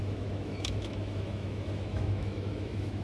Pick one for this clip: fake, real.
fake